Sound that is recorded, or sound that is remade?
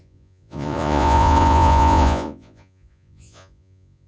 remade